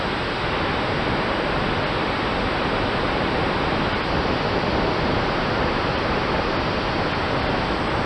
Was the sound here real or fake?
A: real